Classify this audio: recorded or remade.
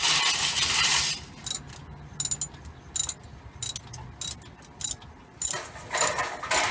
recorded